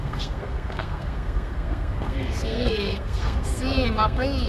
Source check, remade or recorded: remade